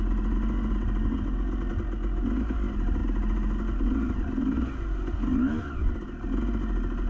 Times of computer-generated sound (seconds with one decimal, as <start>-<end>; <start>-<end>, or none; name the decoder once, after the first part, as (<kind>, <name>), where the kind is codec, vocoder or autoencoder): none